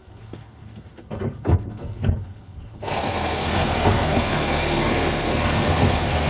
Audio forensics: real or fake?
fake